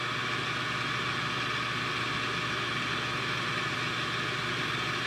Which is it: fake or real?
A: real